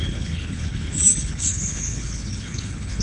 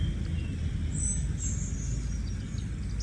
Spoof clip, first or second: first